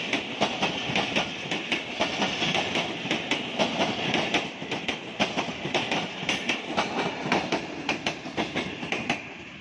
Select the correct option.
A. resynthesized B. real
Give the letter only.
B